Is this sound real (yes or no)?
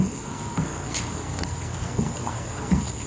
no